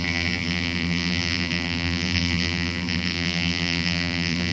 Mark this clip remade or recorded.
remade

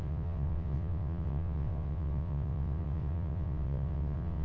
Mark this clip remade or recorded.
remade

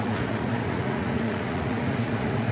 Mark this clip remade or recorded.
remade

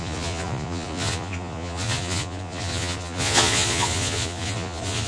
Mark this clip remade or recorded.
remade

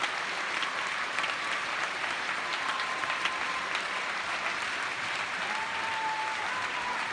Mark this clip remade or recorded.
recorded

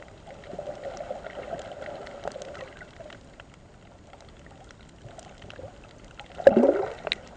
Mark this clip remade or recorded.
recorded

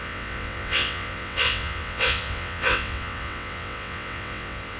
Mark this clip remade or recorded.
remade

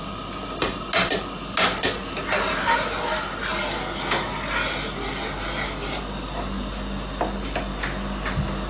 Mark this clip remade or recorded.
recorded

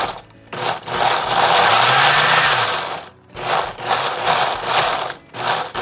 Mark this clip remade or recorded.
recorded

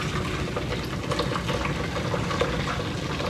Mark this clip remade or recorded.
recorded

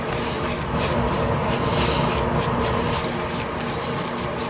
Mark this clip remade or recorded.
recorded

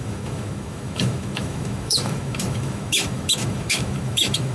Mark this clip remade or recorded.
remade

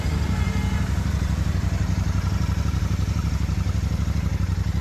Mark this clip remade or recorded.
recorded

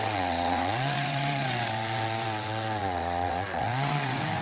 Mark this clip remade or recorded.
remade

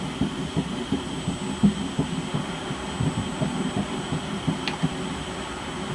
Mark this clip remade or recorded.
recorded